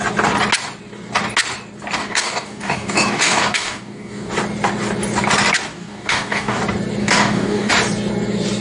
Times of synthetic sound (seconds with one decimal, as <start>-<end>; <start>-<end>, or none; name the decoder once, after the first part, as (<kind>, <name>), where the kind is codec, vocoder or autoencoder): 2.0-4.3 (codec, DAC); 5.7-6.6; 7.0-7.7